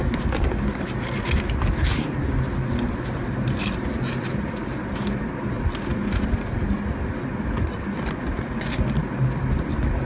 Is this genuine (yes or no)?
yes